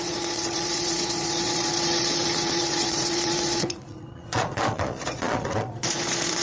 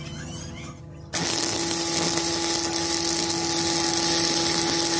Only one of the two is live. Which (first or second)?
second